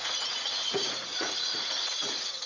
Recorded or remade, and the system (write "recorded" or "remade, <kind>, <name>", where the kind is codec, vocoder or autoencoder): remade, vocoder, Vocos